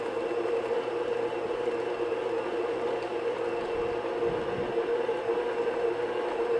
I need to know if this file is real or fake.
real